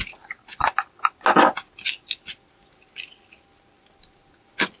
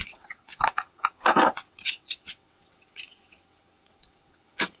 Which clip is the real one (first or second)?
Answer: first